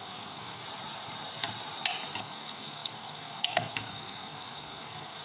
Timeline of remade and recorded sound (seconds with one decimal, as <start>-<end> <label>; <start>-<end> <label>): 0.0-0.6 remade; 0.6-2.2 recorded; 2.2-5.2 remade